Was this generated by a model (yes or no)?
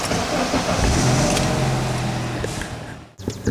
no